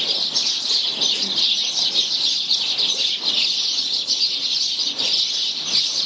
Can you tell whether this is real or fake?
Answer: real